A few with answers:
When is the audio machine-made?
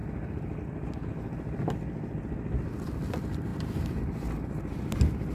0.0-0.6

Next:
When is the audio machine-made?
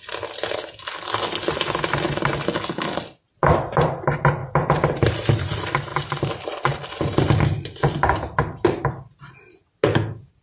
4.4-5.1; 5.9-9.3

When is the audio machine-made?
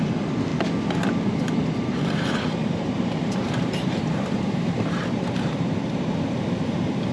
2.6-7.1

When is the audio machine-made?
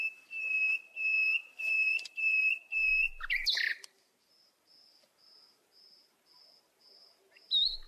1.4-2.9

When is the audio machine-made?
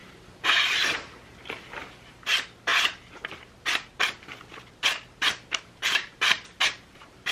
0.0-2.7; 5.6-7.3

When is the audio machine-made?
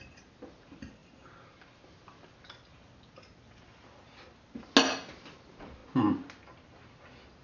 none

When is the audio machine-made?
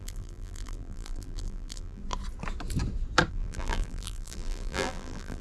0.0-2.0; 3.3-5.4